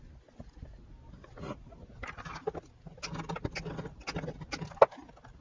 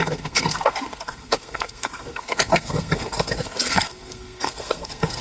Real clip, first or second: first